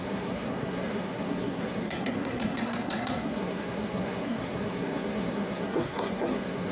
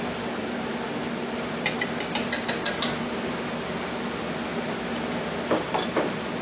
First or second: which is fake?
first